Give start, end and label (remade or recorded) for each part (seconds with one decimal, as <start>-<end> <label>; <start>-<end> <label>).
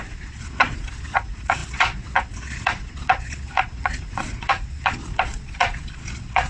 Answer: 0.0-6.5 remade